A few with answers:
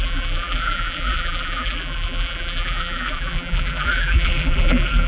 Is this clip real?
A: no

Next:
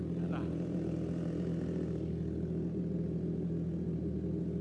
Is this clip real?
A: yes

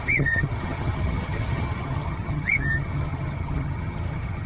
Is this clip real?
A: no